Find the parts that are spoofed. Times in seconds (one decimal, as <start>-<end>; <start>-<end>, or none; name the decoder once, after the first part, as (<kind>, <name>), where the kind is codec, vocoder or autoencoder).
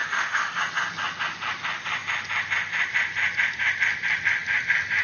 0.0-0.6 (autoencoder, DAC-VAE)